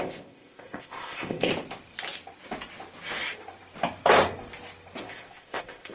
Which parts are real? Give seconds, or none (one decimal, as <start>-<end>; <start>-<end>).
1.5-5.0